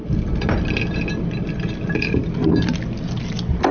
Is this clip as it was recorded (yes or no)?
yes